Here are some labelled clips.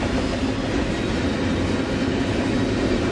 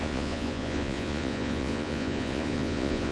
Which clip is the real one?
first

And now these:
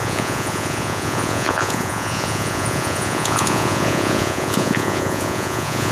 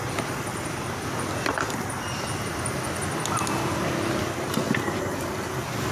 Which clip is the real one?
second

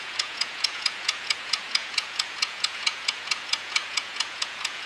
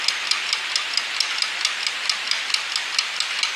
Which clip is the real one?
second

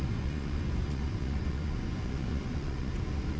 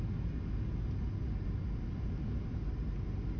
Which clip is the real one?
second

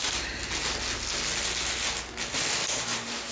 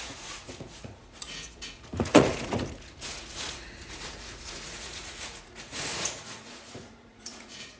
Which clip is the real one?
first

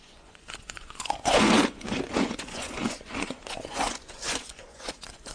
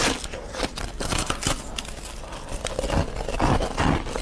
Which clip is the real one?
second